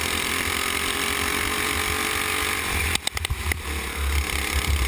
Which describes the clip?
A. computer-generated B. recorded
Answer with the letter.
B